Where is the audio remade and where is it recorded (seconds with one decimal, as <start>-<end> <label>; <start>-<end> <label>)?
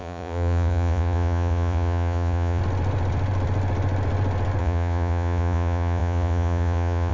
0.0-2.6 remade; 2.6-4.6 recorded; 4.6-7.1 remade